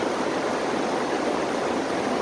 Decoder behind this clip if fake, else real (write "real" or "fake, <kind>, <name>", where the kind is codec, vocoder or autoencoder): fake, vocoder, BigVGAN v2